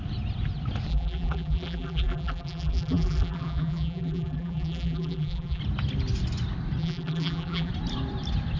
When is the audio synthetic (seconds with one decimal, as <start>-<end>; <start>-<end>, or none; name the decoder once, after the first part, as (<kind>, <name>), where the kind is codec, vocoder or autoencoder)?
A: 0.9-5.6 (vocoder, BigVGAN v2); 6.8-7.7